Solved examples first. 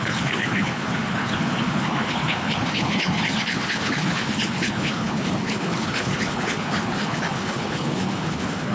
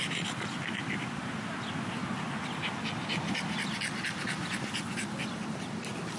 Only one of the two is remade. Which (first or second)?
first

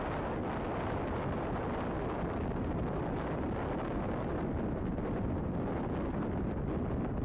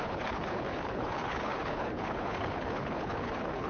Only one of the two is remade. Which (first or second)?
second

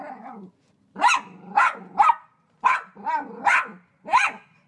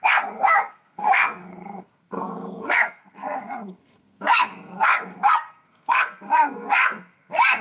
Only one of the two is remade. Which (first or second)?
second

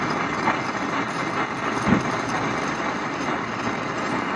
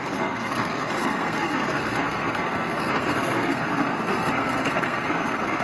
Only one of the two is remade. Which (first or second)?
second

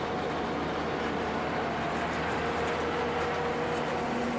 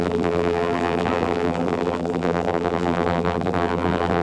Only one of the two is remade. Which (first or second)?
second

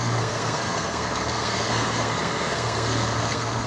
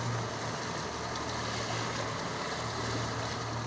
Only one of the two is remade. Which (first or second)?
first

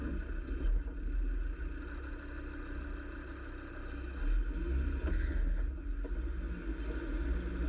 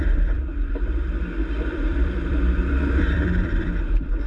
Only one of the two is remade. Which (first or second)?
second